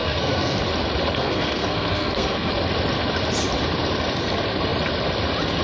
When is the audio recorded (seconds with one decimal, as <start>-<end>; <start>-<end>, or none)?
0.6-1.2; 2.5-5.6